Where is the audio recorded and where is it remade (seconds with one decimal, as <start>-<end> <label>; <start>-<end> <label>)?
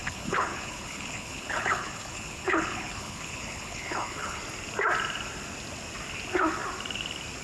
0.0-4.4 remade; 4.4-7.4 recorded